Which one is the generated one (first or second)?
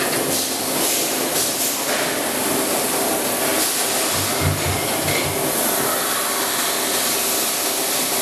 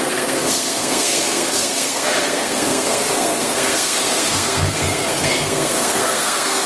second